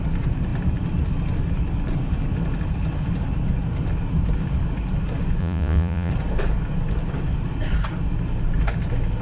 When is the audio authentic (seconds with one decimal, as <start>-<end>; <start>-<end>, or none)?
0.0-5.4; 6.1-9.2